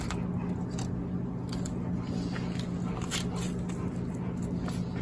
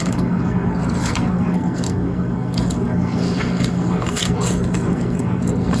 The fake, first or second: second